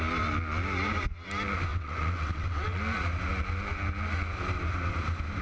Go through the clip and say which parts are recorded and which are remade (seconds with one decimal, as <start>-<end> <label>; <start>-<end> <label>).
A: 0.0-1.7 recorded; 1.7-2.8 remade; 2.8-5.4 recorded

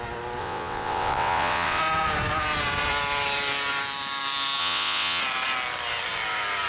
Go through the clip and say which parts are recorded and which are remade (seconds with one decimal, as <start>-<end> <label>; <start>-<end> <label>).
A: 0.0-0.4 recorded; 0.4-1.8 remade; 1.8-4.6 recorded; 4.6-5.2 remade; 5.2-6.7 recorded

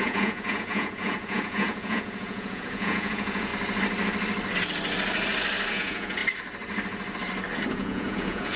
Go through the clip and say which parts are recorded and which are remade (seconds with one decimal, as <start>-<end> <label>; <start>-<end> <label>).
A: 0.0-3.5 remade; 3.5-5.7 recorded; 5.7-6.2 remade; 6.2-7.7 recorded; 7.7-8.6 remade

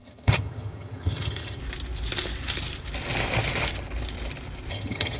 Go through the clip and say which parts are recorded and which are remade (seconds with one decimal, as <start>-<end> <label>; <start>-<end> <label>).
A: 0.0-1.6 remade; 1.6-4.7 recorded; 4.7-5.2 remade

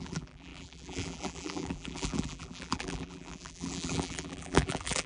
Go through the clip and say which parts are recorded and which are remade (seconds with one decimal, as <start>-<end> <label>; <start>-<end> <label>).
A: 0.0-5.1 remade

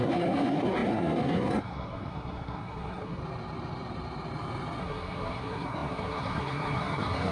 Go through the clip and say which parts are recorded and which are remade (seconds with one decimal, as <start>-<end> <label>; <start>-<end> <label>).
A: 0.0-3.2 remade; 3.2-4.8 recorded; 4.8-7.3 remade

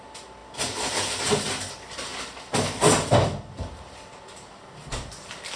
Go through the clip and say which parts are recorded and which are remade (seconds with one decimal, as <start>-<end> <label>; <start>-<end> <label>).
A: 0.0-5.6 recorded